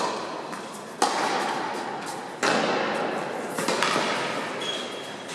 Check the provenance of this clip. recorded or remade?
recorded